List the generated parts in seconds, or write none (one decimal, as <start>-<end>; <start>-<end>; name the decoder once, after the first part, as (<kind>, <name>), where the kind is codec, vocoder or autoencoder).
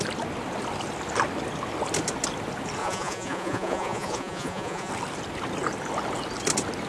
2.8-4.9 (vocoder, Vocos)